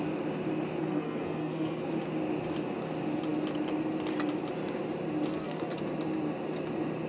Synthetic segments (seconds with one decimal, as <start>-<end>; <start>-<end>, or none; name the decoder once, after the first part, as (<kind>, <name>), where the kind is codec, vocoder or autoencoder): 0.8-1.9 (codec, SNAC); 5.3-5.8